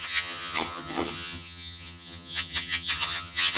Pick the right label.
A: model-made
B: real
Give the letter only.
A